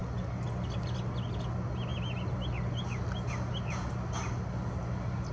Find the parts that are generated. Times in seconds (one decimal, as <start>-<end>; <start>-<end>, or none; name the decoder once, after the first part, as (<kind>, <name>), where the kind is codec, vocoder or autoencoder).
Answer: none